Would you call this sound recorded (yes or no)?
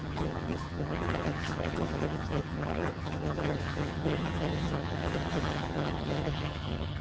no